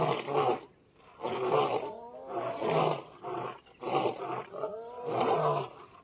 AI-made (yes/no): no